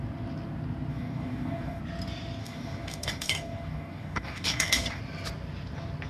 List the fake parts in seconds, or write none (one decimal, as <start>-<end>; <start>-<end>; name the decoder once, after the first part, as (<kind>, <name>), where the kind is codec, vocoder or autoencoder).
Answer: 0.9-1.8 (codec, DAC); 2.4-5.0